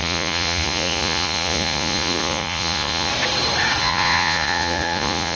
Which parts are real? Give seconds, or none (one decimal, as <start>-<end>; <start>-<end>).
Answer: 3.1-3.8